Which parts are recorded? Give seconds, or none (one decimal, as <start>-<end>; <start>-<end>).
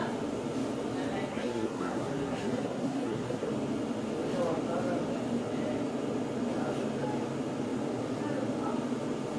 0.0-1.3; 3.5-9.4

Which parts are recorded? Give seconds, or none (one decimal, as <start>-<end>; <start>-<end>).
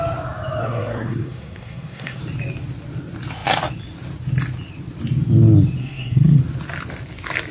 0.0-0.6; 2.2-5.8; 6.4-7.5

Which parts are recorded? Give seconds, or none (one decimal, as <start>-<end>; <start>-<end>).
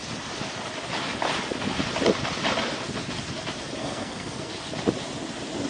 0.0-3.8; 4.5-5.7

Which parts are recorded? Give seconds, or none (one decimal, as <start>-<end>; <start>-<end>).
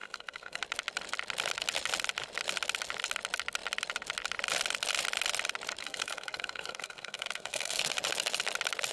0.6-5.8; 7.8-8.9